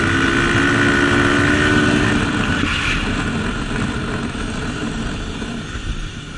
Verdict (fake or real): real